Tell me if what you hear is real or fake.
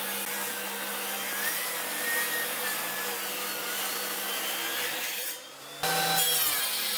real